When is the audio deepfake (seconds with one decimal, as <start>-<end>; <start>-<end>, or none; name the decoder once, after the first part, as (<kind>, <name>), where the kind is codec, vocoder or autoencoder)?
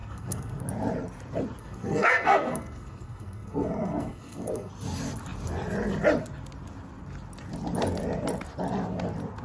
0.0-0.6 (codec, SNAC); 1.6-4.7